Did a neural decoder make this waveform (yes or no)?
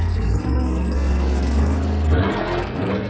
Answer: yes